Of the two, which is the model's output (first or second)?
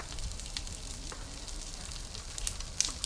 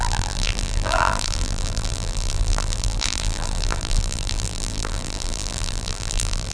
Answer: second